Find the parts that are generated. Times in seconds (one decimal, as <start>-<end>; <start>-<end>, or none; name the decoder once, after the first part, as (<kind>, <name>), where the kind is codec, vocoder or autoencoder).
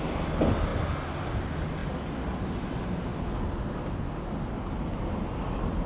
none